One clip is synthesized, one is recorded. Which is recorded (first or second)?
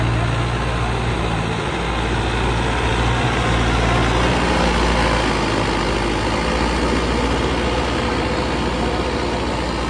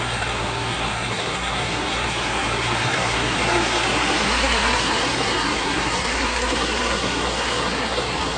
first